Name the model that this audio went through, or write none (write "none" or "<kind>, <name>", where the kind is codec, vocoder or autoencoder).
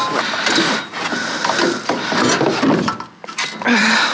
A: none